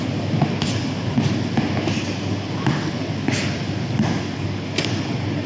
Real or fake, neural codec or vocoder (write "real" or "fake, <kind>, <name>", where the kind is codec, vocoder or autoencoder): real